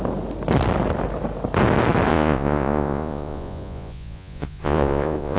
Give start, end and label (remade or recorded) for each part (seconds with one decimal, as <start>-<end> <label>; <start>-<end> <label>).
0.0-2.1 recorded; 2.1-5.4 remade